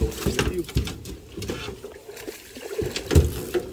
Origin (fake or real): real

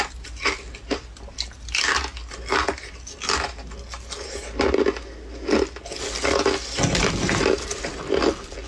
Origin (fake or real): real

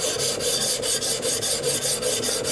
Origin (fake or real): real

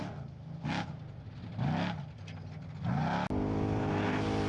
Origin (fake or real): real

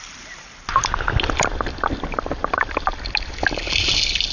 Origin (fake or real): real